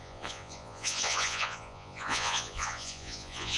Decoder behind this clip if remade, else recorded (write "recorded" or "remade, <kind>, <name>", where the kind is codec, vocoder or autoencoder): remade, vocoder, Vocos